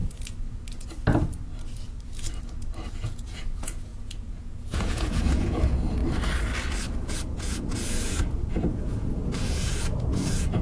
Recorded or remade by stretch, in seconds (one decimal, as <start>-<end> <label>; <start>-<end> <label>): 0.0-2.9 recorded; 2.9-6.0 remade; 6.0-7.1 recorded; 7.1-10.6 remade